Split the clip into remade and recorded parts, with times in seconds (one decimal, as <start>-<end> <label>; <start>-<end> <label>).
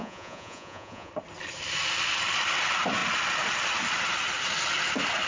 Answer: 0.0-1.1 remade; 1.1-5.3 recorded